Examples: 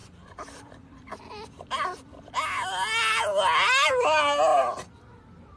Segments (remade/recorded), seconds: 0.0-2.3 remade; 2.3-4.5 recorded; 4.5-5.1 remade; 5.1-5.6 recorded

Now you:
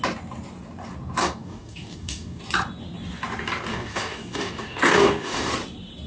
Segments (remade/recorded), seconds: 0.0-1.2 recorded; 1.2-2.4 remade; 2.4-3.7 recorded; 3.7-5.5 remade; 5.5-6.1 recorded

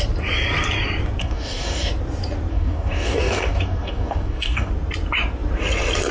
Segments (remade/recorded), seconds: 0.0-1.2 recorded; 1.2-1.9 remade; 1.9-2.5 recorded; 2.5-4.7 remade; 4.7-6.1 recorded